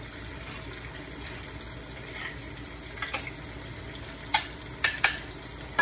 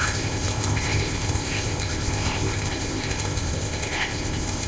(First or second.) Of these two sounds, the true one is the first